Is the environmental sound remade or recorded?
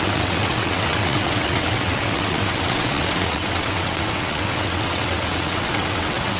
remade